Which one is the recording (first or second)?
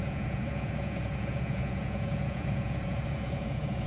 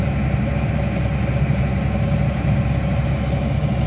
second